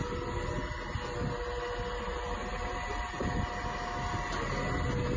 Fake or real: real